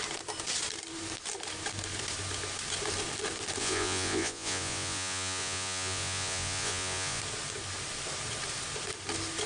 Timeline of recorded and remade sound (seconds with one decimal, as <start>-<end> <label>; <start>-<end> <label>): 0.0-3.6 recorded; 3.6-7.2 remade; 7.2-9.5 recorded